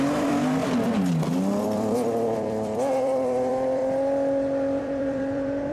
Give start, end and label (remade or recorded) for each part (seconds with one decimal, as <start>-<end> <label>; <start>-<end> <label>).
0.0-0.6 remade; 0.6-1.6 recorded; 1.6-3.8 remade; 3.8-4.8 recorded; 4.8-5.7 remade